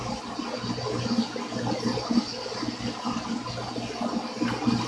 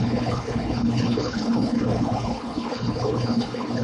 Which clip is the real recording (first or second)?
first